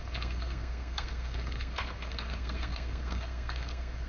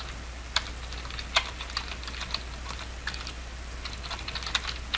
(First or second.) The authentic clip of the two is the second